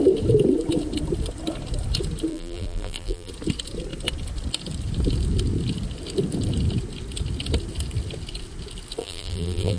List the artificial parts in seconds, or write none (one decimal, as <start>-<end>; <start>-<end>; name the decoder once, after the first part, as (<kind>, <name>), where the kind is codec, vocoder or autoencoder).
2.3-3.3 (vocoder, BigVGAN v2); 9.0-9.8